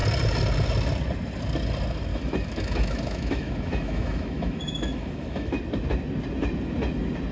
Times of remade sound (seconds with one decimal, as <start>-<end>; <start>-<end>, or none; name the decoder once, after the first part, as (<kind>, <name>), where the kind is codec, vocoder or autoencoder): 2.1-5.6 (autoencoder, DAC-VAE)